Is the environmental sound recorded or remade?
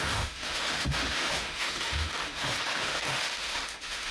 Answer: remade